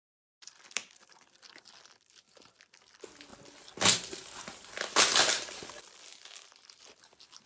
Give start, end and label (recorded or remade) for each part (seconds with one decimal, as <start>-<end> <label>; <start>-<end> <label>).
0.0-7.5 recorded